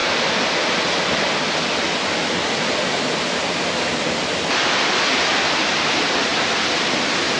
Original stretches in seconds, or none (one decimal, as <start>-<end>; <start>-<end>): 0.0-7.4